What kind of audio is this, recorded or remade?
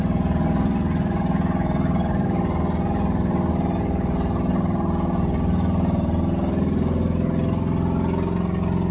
recorded